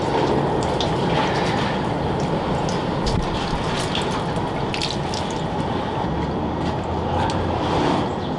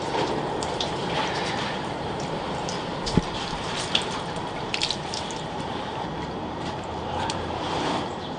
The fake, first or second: second